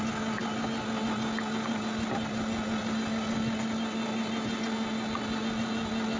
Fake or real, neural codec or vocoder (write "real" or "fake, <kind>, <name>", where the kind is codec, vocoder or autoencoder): real